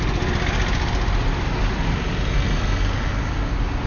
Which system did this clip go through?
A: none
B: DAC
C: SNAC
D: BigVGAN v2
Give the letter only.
A